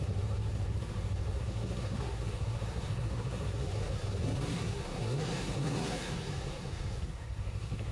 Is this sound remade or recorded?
remade